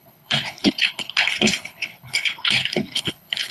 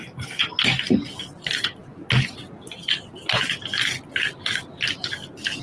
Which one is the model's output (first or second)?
first